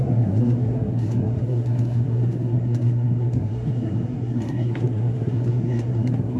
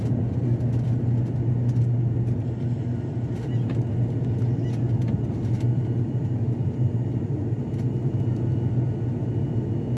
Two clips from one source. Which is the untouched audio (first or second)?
second